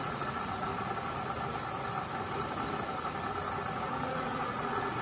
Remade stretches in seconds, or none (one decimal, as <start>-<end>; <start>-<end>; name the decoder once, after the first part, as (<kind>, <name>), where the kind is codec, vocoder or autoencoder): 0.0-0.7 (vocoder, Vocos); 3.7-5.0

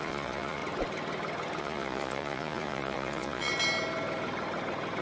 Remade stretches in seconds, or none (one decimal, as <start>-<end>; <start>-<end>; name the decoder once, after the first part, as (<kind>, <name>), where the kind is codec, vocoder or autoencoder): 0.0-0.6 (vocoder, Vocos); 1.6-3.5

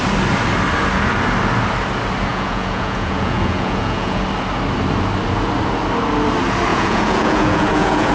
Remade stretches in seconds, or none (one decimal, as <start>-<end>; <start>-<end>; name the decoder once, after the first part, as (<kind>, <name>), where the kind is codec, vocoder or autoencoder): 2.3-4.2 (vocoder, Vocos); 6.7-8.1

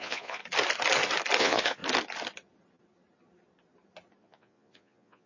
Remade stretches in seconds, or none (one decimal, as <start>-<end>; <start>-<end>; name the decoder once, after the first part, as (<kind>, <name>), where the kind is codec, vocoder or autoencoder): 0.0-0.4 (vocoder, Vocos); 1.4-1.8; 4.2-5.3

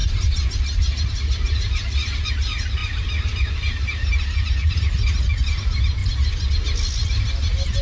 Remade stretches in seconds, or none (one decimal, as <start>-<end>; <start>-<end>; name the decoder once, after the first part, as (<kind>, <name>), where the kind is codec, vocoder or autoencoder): none

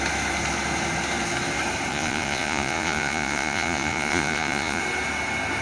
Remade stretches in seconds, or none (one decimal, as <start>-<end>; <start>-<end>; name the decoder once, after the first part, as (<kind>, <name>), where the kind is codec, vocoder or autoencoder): 1.9-4.8 (vocoder, Vocos)